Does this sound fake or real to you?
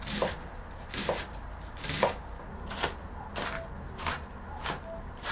real